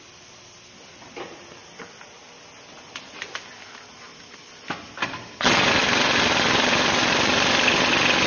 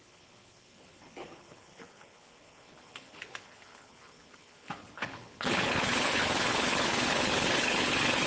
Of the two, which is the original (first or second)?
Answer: first